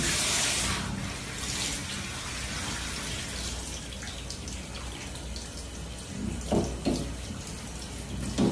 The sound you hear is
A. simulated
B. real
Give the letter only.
B